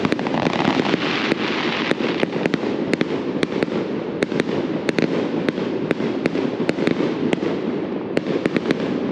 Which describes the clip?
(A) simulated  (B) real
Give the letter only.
B